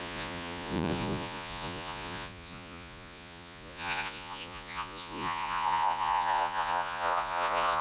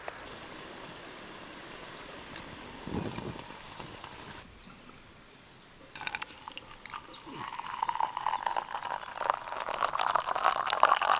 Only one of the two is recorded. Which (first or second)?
second